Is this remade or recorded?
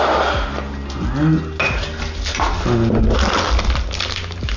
recorded